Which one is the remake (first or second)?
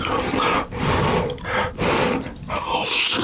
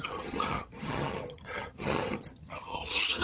second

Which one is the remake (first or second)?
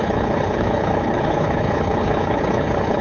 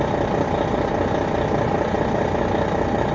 first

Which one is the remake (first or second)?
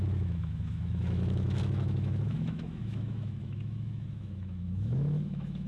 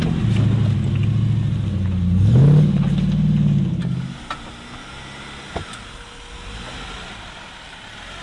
first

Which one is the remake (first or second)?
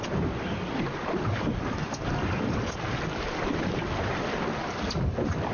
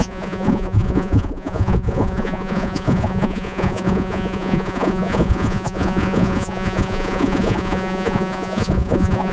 second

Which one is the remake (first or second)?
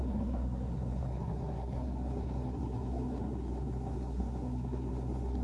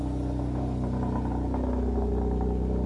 first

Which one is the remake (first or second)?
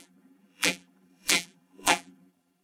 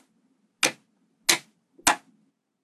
first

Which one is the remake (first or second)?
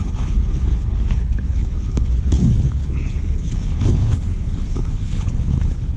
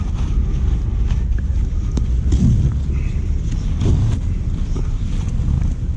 first